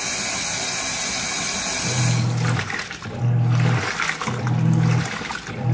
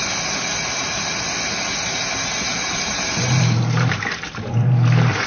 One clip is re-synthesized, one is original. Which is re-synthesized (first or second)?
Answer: second